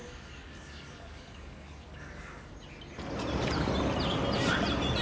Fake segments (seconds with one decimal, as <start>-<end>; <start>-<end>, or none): 0.0-2.5